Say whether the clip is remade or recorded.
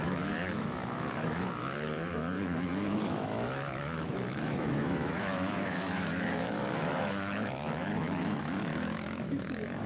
remade